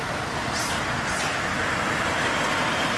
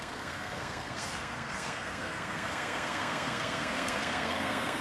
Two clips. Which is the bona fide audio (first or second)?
first